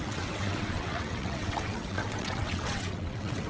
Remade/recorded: remade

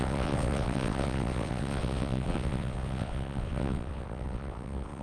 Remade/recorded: remade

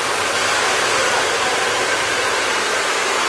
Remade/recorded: recorded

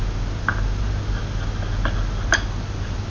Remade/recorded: recorded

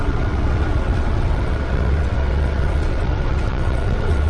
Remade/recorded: remade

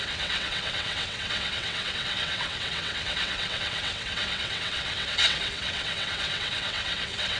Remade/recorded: remade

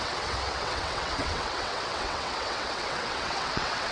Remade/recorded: remade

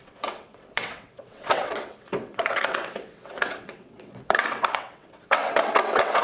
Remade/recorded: remade